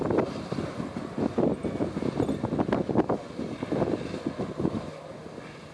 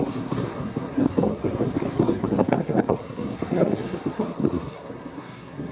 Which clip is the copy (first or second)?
second